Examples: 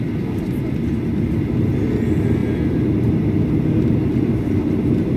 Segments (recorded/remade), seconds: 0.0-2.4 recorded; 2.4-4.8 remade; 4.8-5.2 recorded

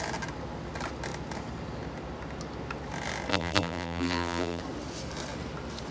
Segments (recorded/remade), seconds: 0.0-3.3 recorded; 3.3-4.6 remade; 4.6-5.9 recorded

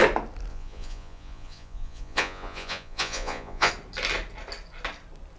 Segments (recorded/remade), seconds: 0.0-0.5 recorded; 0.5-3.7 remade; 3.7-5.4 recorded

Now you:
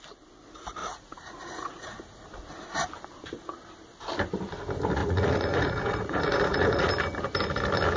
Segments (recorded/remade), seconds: 0.0-0.8 recorded; 0.8-2.2 remade; 2.2-5.0 recorded; 5.0-6.9 remade; 6.9-8.0 recorded

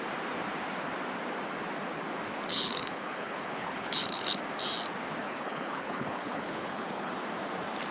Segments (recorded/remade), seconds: 0.0-2.5 recorded; 2.5-4.4 remade; 4.4-5.2 recorded; 5.2-7.1 remade; 7.1-7.9 recorded